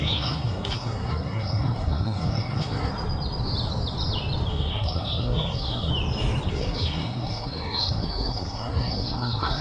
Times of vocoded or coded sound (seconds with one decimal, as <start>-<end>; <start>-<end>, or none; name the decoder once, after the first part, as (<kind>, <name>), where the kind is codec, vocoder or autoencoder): 0.0-2.9 (codec, SNAC); 4.5-5.9; 6.5-9.6

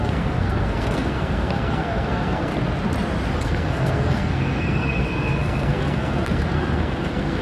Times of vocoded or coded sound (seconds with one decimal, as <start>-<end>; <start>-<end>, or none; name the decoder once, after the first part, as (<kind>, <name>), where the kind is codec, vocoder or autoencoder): 0.0-2.5 (codec, SNAC); 3.4-7.4

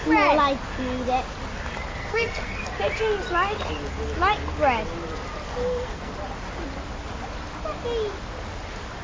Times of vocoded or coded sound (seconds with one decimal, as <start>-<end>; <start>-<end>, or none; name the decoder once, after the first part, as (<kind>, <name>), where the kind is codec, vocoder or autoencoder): 1.9-2.6 (codec, SNAC); 5.6-6.1

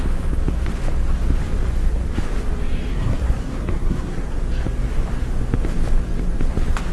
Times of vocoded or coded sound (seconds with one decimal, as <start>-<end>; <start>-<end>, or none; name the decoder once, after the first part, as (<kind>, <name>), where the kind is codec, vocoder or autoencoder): 2.9-4.4 (codec, SNAC)